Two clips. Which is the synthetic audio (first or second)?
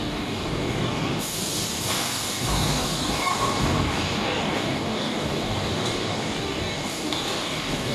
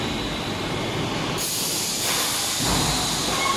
first